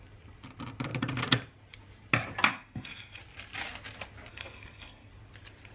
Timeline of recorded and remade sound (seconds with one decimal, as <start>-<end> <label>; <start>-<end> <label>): 0.0-2.5 recorded; 2.5-3.2 remade; 3.2-4.3 recorded; 4.3-5.1 remade; 5.1-5.7 recorded